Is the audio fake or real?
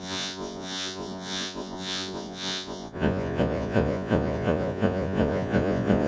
fake